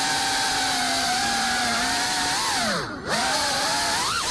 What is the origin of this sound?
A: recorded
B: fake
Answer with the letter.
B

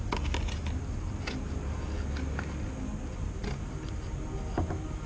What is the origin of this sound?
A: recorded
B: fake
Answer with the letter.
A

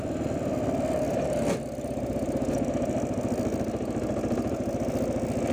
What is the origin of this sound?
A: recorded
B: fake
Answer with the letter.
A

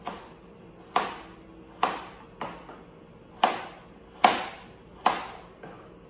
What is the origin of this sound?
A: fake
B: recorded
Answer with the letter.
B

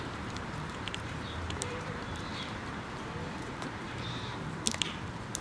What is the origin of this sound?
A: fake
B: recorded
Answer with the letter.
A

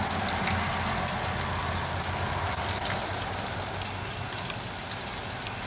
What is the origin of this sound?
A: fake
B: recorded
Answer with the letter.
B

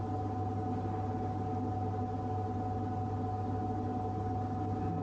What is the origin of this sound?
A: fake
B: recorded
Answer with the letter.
B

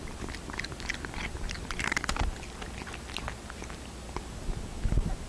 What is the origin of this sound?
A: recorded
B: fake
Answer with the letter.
A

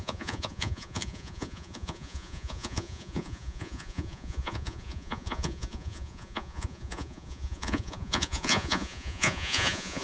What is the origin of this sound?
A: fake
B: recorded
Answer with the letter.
A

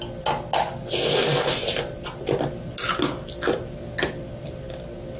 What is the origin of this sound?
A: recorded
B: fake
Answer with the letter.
A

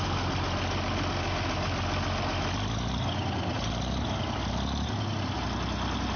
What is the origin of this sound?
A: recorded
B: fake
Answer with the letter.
A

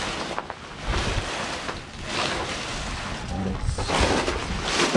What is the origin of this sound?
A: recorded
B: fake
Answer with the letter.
A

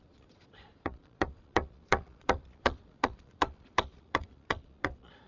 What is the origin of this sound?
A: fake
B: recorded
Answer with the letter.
A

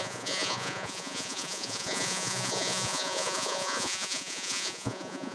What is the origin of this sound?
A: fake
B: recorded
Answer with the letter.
A